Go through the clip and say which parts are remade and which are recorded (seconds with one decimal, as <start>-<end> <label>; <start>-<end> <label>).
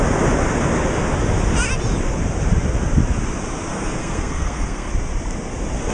0.0-3.7 recorded; 3.7-4.9 remade; 4.9-5.9 recorded